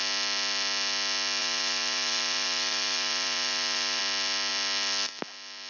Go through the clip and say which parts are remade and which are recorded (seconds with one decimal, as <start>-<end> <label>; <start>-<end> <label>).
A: 0.0-1.4 recorded; 1.4-4.0 remade; 4.0-5.7 recorded